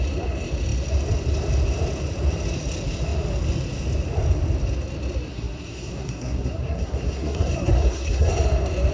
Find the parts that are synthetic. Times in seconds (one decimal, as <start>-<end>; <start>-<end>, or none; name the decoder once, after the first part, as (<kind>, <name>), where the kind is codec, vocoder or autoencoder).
5.3-8.3 (codec, SNAC)